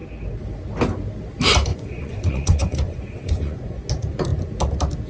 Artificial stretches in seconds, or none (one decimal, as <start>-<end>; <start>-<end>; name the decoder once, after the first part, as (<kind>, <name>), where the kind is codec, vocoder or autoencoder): 1.7-3.9 (vocoder, Vocos)